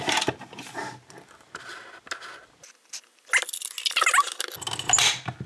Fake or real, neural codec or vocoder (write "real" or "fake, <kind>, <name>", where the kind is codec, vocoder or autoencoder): real